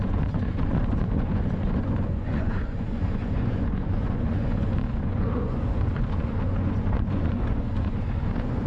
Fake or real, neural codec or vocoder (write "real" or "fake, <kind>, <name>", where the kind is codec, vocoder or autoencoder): fake, vocoder, Vocos